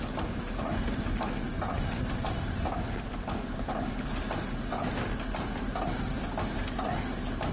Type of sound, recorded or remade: recorded